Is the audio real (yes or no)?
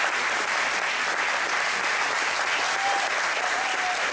yes